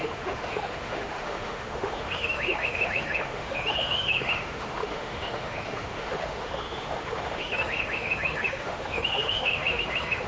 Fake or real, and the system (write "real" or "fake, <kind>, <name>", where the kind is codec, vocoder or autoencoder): fake, autoencoder, DAC-VAE